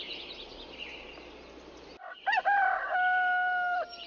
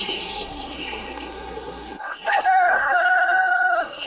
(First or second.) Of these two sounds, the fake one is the second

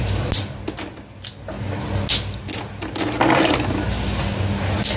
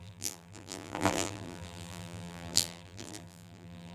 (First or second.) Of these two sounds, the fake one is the second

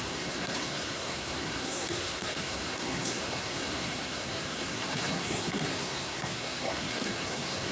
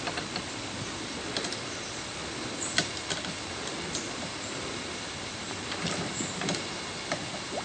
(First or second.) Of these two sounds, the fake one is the first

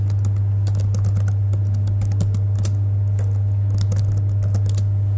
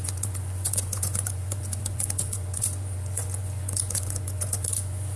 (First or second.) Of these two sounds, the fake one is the second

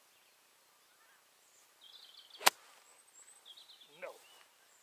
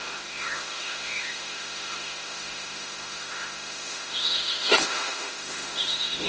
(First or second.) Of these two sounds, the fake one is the second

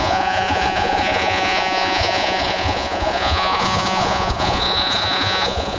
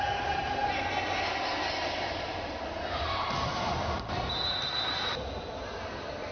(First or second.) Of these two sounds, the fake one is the first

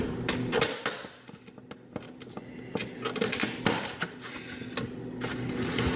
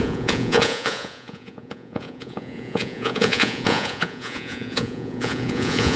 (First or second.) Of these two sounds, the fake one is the second